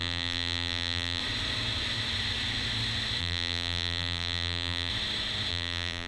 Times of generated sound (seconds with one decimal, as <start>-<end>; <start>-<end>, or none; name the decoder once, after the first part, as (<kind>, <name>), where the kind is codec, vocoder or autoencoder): 0.0-1.2 (vocoder, BigVGAN v2); 3.2-4.9; 5.5-6.1